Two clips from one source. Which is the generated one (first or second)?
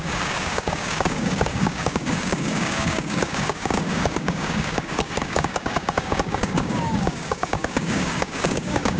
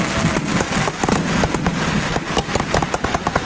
first